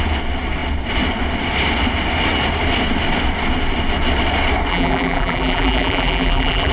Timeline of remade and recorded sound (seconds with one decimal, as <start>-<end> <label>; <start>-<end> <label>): 0.0-4.7 recorded; 4.7-6.7 remade